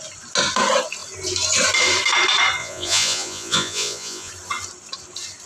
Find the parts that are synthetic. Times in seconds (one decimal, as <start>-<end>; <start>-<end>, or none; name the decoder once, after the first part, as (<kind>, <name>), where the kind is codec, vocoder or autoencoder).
2.6-4.3 (vocoder, Vocos)